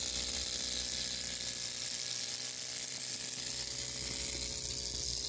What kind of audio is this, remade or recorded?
recorded